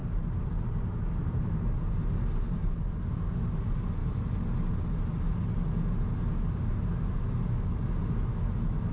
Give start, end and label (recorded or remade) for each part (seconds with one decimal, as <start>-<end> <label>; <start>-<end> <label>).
0.0-8.9 recorded